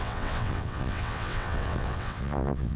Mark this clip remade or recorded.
remade